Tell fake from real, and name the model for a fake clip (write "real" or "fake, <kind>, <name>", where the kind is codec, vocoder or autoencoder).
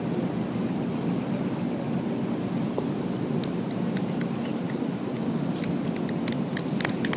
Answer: real